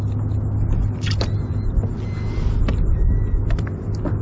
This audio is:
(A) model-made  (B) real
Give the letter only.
B